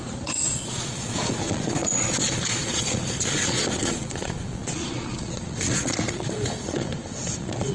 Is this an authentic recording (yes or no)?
no